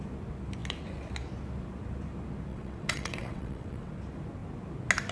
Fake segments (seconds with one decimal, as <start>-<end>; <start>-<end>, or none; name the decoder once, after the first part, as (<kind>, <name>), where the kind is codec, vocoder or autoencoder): 2.5-3.9 (vocoder, WaveNeXt)